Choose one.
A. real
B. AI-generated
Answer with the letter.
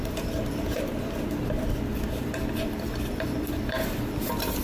B